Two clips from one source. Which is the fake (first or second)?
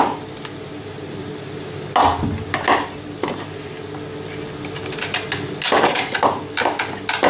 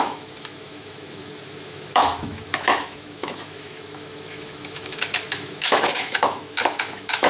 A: second